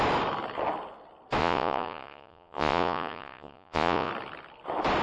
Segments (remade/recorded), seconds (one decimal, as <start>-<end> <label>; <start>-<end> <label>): 0.0-1.4 recorded; 1.4-4.1 remade; 4.1-5.0 recorded